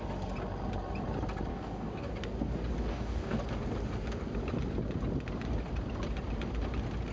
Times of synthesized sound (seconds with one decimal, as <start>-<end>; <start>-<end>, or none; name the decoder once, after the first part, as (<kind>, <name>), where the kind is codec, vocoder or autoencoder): 1.5-2.1 (codec, DAC); 2.9-3.4